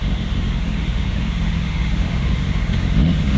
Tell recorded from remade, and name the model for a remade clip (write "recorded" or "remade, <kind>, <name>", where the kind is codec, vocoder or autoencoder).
remade, autoencoder, DAC-VAE